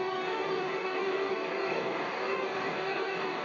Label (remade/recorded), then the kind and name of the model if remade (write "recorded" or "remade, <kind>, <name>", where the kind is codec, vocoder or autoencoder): remade, codec, DAC